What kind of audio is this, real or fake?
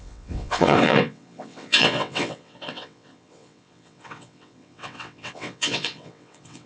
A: fake